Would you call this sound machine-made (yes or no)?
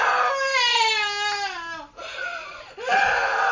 no